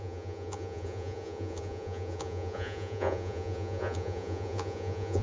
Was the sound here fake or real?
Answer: fake